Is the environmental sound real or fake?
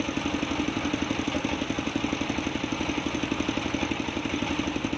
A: real